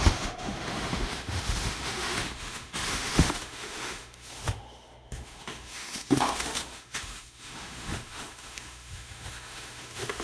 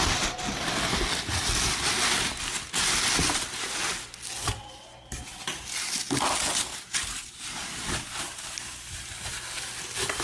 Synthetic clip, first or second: first